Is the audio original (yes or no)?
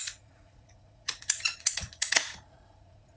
no